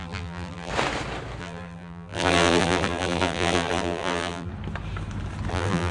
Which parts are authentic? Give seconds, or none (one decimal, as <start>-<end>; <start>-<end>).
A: 0.7-1.4; 4.5-5.5